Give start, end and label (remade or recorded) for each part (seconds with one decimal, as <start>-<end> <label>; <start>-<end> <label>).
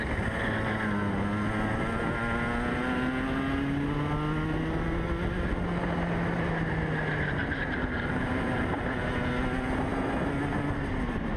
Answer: 0.0-7.4 recorded; 7.4-8.8 remade; 8.8-11.4 recorded